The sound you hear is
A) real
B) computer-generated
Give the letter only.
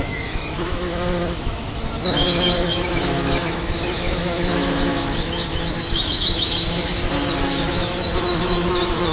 B